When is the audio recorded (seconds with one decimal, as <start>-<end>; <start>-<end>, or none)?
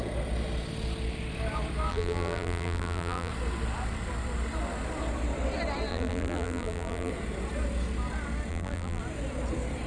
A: 0.0-1.9; 3.3-5.9; 7.1-8.5; 9.0-9.9